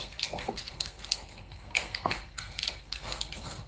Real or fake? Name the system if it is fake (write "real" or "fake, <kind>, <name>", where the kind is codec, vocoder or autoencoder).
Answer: fake, codec, SNAC